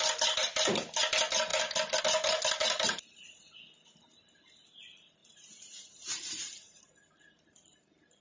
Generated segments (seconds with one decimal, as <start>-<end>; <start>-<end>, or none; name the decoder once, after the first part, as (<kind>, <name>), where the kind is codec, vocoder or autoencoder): 2.6-3.5 (vocoder, BigVGAN v2); 5.2-8.2